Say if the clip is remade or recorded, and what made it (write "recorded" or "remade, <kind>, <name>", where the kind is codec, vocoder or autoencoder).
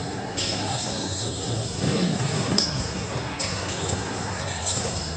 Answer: remade, codec, SNAC